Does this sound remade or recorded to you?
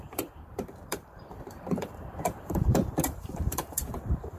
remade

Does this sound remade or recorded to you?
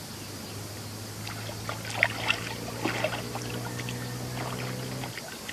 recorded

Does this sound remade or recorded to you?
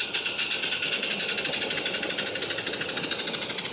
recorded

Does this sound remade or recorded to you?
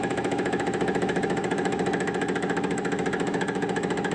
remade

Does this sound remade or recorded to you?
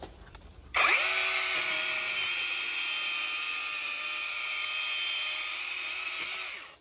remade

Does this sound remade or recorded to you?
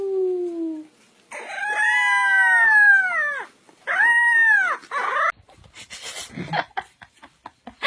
recorded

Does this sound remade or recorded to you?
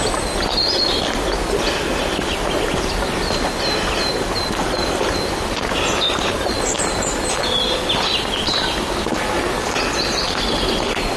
recorded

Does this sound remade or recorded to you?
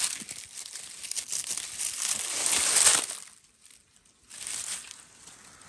recorded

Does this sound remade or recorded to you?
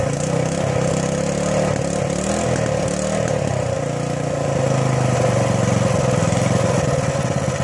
recorded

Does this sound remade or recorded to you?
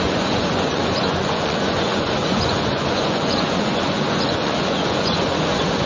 remade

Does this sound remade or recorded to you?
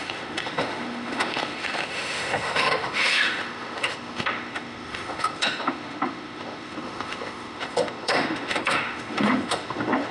remade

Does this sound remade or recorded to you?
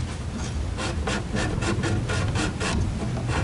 recorded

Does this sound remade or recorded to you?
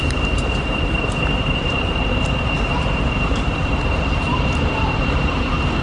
remade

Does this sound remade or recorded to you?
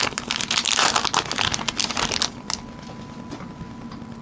recorded